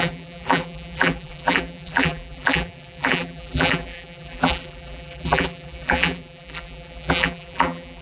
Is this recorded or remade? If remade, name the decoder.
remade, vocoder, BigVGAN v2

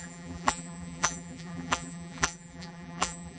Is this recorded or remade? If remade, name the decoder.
remade, vocoder, BigVGAN v2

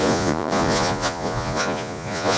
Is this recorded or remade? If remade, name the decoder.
remade, vocoder, Vocos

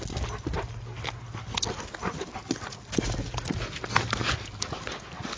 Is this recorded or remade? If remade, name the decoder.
recorded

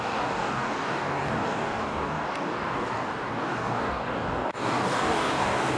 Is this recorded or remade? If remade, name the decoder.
remade, codec, DAC